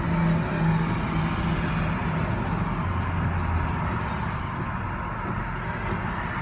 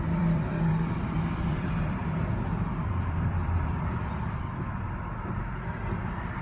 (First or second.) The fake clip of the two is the second